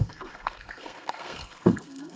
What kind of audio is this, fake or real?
fake